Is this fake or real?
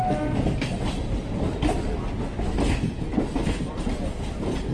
real